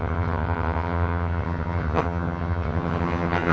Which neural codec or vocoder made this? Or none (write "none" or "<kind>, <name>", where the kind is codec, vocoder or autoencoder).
vocoder, HiFi-GAN